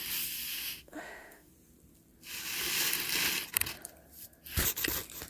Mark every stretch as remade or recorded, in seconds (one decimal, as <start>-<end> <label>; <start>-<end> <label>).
0.0-0.5 recorded; 0.5-1.5 remade; 1.5-5.3 recorded